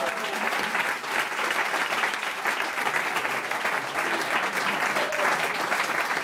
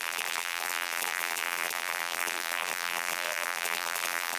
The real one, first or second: first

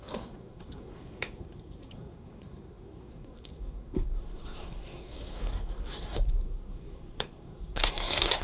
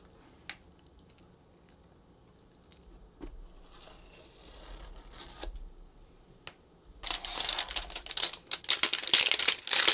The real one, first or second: second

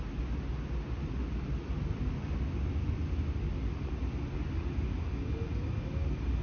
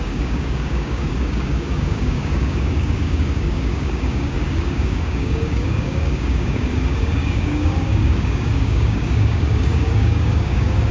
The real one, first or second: first